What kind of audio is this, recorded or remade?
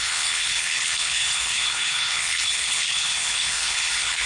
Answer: remade